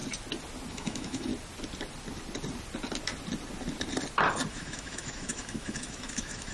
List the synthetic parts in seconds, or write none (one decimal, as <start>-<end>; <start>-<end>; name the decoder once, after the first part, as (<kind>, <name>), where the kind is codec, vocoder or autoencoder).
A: 0.7-1.3 (autoencoder, DAC-VAE); 4.5-6.5